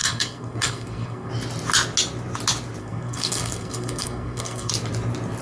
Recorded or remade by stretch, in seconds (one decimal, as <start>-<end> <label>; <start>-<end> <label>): 0.0-1.3 remade; 1.3-2.8 recorded; 2.8-4.7 remade; 4.7-5.4 recorded